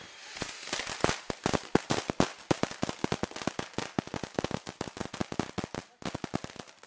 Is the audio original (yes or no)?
yes